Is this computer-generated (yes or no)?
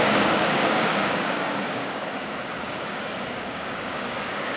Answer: yes